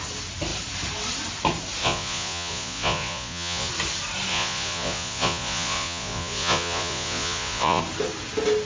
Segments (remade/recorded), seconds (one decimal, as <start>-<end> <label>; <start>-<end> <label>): 0.0-1.8 recorded; 1.8-3.7 remade; 3.7-4.3 recorded; 4.3-7.8 remade; 7.8-8.7 recorded